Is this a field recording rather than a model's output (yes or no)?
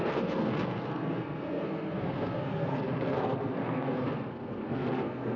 no